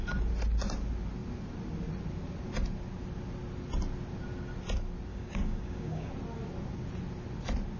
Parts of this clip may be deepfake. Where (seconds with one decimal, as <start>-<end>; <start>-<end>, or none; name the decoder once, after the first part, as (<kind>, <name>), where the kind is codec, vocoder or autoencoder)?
5.1-6.1 (codec, DAC)

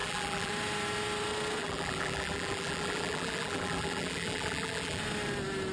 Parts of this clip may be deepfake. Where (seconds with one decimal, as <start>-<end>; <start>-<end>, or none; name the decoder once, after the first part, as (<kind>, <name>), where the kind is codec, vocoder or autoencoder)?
0.0-0.5 (vocoder, BigVGAN v2); 1.6-5.0

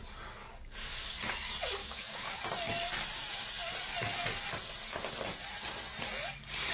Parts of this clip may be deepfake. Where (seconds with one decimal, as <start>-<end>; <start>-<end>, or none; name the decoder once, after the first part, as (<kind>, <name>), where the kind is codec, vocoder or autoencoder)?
0.4-1.1 (codec, DAC); 1.8-2.4